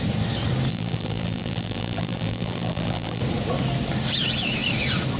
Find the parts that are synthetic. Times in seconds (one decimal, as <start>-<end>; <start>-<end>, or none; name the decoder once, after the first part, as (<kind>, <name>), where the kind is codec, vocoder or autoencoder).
0.7-3.2 (vocoder, BigVGAN v2)